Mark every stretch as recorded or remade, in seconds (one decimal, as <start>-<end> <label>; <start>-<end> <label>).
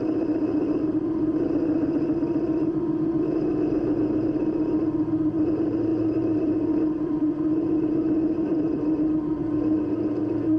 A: 0.0-5.9 recorded; 5.9-7.3 remade; 7.3-8.5 recorded; 8.5-9.2 remade; 9.2-10.6 recorded